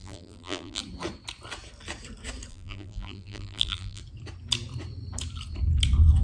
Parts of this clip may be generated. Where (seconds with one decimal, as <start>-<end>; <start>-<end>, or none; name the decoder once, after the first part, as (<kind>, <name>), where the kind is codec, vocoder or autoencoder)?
0.0-0.8 (vocoder, BigVGAN v2); 2.5-4.0